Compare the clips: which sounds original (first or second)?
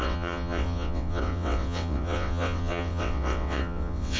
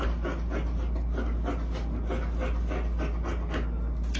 second